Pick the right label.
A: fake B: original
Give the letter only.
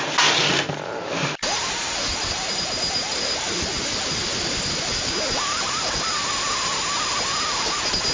B